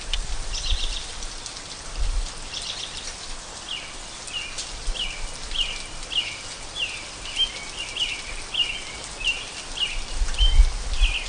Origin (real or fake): real